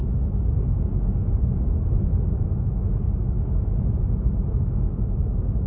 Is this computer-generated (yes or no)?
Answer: yes